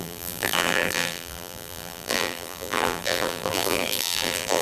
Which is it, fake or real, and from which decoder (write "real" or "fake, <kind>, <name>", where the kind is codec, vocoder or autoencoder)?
fake, vocoder, BigVGAN v2